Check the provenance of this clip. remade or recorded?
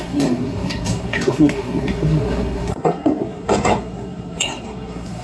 remade